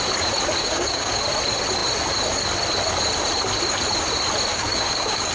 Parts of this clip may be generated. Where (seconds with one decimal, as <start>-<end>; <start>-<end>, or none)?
0.6-1.2; 4.5-5.3